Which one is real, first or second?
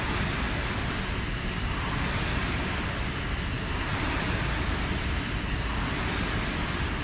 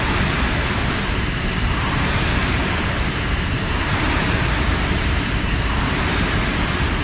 first